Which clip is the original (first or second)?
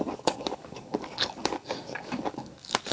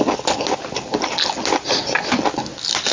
second